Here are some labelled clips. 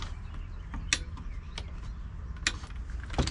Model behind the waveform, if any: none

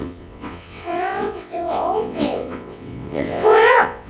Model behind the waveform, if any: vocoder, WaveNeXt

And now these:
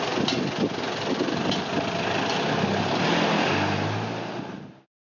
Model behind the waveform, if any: none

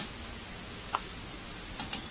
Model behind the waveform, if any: none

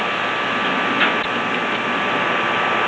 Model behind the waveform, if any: none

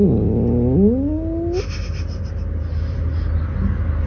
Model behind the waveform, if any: none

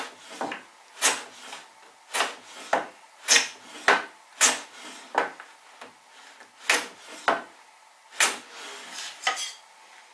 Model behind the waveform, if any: none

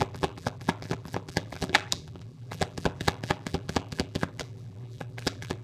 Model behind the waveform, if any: vocoder, BigVGAN v2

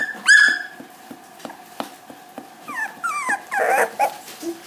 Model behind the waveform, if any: none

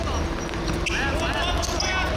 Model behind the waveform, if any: none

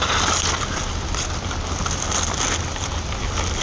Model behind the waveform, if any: none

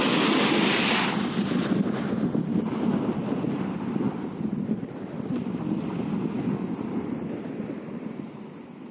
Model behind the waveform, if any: none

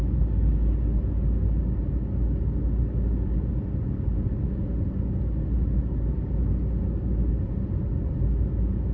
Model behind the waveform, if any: none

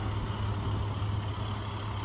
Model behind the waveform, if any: none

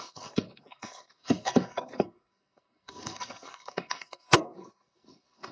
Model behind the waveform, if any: codec, SNAC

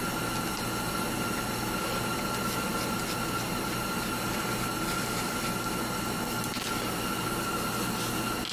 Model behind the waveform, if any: none